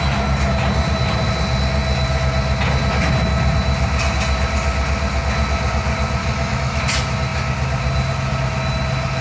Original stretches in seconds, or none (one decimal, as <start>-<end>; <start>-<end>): 0.0-6.2; 6.8-9.2